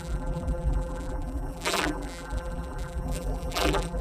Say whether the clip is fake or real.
fake